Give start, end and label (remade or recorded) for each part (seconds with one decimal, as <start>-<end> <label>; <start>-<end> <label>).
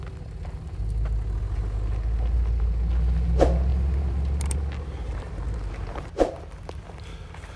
0.0-3.7 recorded; 3.7-6.3 remade; 6.3-7.6 recorded